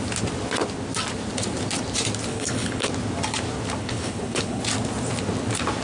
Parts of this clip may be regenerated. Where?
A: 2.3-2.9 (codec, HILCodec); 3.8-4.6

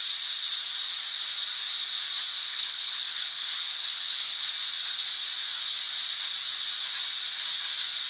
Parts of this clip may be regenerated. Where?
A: 2.4-4.5 (codec, HILCodec)